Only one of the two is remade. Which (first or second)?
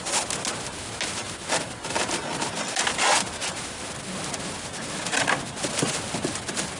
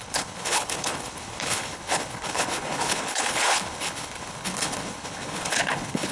second